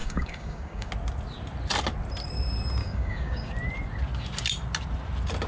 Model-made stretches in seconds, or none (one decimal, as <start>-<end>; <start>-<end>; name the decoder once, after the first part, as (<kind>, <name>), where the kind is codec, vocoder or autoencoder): 0.0-0.9 (codec, DAC); 2.8-3.5